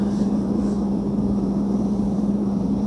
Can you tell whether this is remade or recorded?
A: remade